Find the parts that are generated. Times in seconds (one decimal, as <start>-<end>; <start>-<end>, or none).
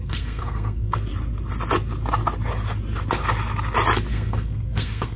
0.0-1.1; 4.1-5.2